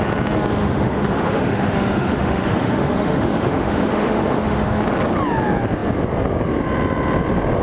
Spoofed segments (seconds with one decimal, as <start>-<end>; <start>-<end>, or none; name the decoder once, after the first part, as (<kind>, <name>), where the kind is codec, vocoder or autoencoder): 0.6-4.8 (autoencoder, DAC-VAE)